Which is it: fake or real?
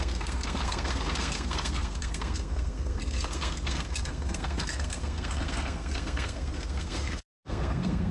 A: fake